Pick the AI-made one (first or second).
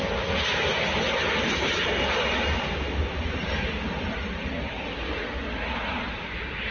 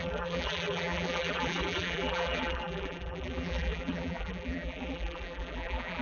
second